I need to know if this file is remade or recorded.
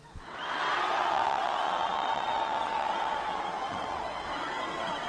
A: remade